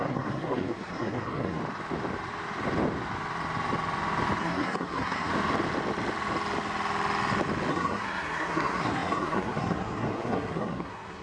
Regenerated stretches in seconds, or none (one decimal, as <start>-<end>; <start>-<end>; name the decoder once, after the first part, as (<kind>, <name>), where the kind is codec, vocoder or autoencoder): 0.0-1.6 (codec, SNAC); 4.4-5.3; 7.7-11.2